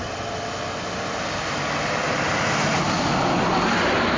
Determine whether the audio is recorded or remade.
recorded